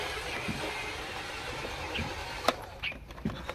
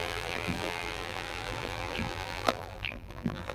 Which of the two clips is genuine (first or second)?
first